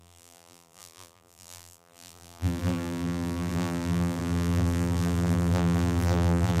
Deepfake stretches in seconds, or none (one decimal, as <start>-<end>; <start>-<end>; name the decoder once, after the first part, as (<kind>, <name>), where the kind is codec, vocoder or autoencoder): 0.0-6.6 (vocoder, BigVGAN v2)